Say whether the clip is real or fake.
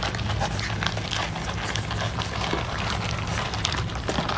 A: real